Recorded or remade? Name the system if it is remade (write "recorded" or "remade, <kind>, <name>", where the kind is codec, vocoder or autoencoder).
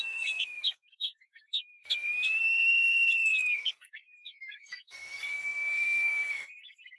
remade, codec, SNAC